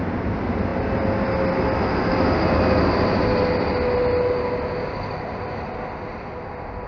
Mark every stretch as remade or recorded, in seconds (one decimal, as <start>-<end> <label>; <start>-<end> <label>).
0.0-6.9 recorded

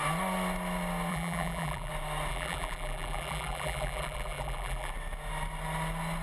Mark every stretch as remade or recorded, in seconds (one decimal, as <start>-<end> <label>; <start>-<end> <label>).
0.0-1.1 recorded; 1.1-1.9 remade; 1.9-2.3 recorded; 2.3-4.9 remade; 4.9-6.2 recorded

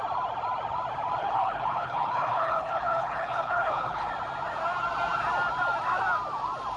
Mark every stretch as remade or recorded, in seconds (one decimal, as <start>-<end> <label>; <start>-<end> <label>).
0.0-1.2 recorded; 1.2-4.1 remade; 4.1-6.8 recorded

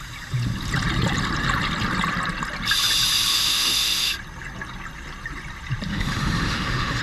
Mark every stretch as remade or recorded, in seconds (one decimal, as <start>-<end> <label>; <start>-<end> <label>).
0.0-3.3 recorded; 3.3-4.1 remade; 4.1-5.9 recorded; 5.9-7.0 remade